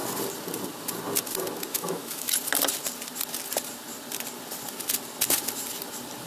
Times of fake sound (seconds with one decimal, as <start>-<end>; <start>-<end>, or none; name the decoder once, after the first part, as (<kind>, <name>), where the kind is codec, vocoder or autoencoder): 1.7-2.3 (autoencoder, DAC-VAE)